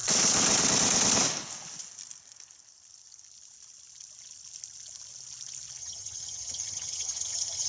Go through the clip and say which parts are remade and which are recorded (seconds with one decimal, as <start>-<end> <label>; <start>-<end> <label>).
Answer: 0.0-5.8 recorded; 5.8-7.7 remade